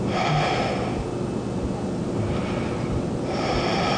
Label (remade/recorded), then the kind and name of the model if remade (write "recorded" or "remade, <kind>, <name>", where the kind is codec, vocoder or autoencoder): recorded